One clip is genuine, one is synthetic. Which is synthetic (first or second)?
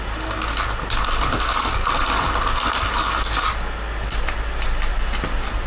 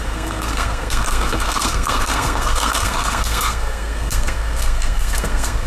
second